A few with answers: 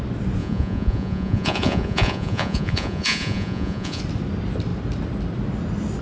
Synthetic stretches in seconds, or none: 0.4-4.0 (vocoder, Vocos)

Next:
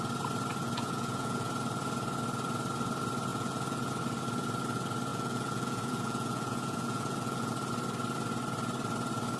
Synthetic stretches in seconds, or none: 0.6-1.5 (vocoder, Vocos); 3.3-3.9; 5.1-7.5

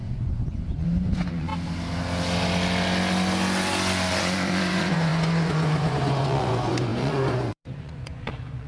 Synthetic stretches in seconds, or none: 0.0-1.5 (vocoder, Vocos); 4.1-8.7

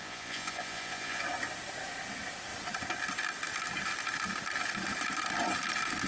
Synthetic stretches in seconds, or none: 0.0-1.2 (vocoder, Vocos)

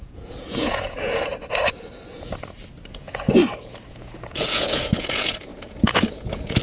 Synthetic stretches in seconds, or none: 0.0-1.3 (vocoder, Vocos); 2.9-3.4; 3.9-6.6

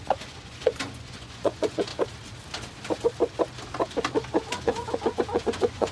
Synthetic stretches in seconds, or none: 0.0-1.9 (vocoder, Vocos); 4.6-5.9

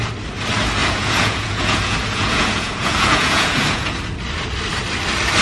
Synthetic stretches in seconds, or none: 0.8-4.0 (vocoder, Vocos)

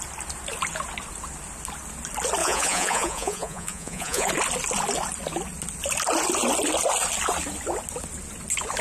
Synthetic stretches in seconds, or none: 2.4-4.3 (vocoder, Vocos)